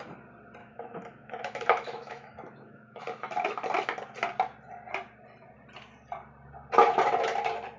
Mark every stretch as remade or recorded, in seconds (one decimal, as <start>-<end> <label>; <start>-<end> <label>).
0.0-0.6 recorded; 0.6-3.0 remade; 3.0-7.8 recorded